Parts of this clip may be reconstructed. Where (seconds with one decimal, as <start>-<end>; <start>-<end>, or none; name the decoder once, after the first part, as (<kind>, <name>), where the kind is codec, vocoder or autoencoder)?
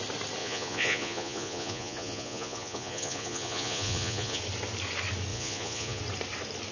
0.4-4.4 (vocoder, Vocos); 5.3-6.0